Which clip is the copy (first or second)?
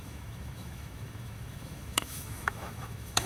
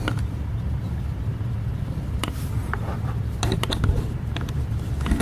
first